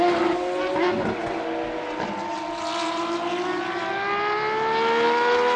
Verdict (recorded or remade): recorded